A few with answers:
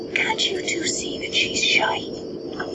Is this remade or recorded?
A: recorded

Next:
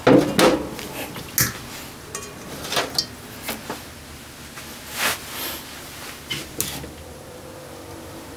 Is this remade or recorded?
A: recorded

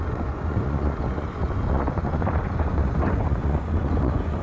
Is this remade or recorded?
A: remade